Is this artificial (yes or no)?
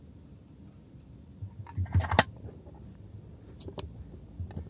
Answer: no